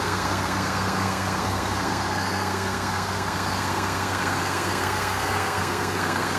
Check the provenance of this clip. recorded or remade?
remade